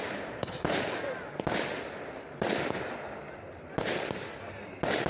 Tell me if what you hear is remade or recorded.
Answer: recorded